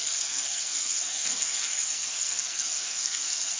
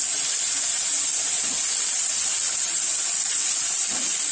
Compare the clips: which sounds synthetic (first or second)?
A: first